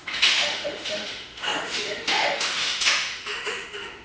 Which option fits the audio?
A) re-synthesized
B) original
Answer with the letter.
A